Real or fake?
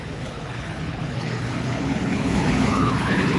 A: fake